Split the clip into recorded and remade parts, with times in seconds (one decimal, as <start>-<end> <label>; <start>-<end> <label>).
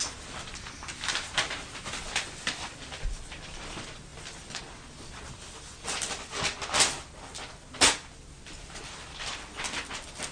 0.0-10.3 recorded